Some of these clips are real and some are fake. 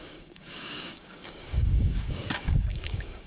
fake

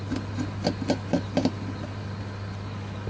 real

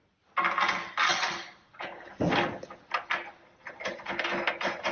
real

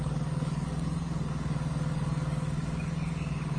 fake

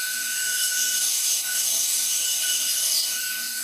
fake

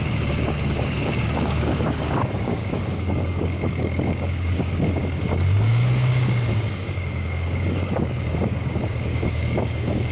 fake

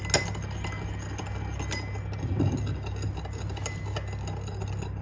real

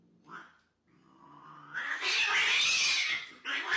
real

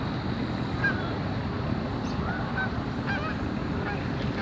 real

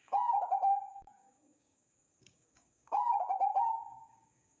fake